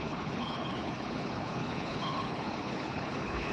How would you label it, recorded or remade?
remade